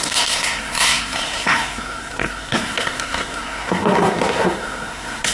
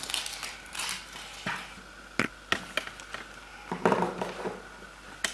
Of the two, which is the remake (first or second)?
first